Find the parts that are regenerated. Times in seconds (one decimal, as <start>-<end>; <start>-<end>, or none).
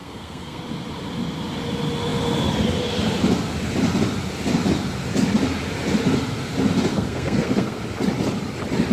0.0-0.6; 6.9-7.8